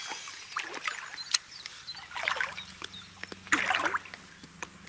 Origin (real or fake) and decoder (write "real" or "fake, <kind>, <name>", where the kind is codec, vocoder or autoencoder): real